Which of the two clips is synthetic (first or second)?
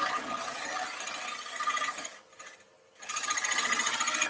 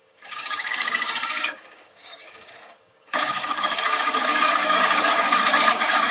second